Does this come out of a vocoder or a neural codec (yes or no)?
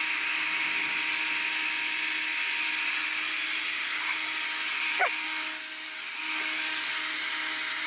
no